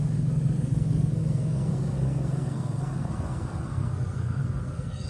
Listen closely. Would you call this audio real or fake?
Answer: fake